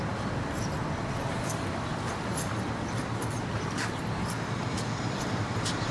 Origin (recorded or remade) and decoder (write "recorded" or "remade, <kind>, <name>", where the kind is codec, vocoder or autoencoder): recorded